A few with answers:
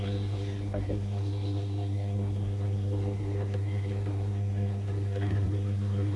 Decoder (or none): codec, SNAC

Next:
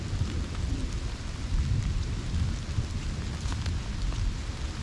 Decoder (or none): none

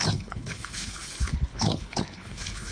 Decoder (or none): codec, HILCodec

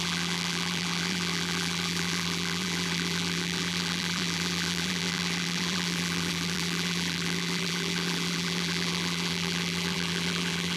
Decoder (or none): vocoder, BigVGAN v2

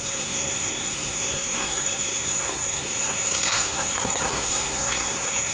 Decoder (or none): codec, SNAC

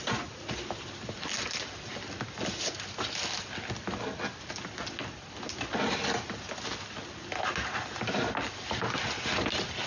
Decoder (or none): none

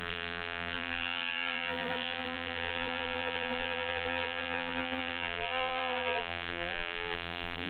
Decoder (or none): vocoder, BigVGAN v2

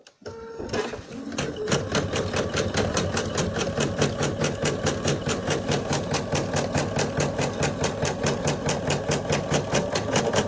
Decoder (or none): none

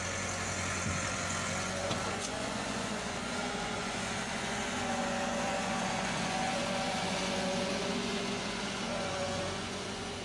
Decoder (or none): vocoder, Vocos